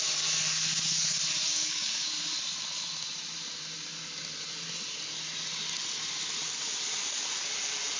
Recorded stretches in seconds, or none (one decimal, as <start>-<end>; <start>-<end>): 0.0-1.5; 2.1-8.0